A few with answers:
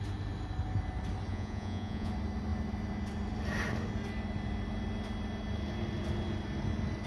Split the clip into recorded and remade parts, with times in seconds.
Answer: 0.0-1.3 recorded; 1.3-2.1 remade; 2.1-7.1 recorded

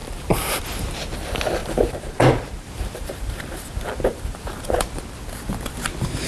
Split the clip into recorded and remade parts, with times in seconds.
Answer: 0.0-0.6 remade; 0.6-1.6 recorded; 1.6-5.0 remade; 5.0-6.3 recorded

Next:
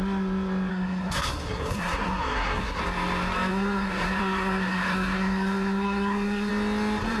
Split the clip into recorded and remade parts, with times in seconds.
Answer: 0.0-0.7 recorded; 0.7-2.8 remade; 2.8-3.5 recorded; 3.5-6.5 remade; 6.5-7.2 recorded

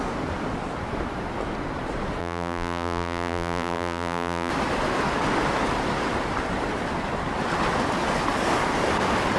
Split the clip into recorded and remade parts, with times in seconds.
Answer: 0.0-2.2 recorded; 2.2-4.5 remade; 4.5-9.4 recorded

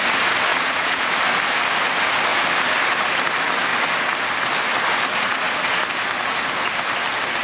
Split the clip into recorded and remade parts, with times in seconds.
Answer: 0.0-0.5 recorded; 0.5-1.1 remade; 1.1-7.4 recorded

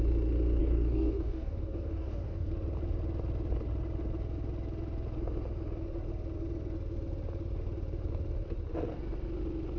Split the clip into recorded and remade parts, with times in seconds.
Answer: 0.0-0.6 recorded; 0.6-2.5 remade; 2.5-9.8 recorded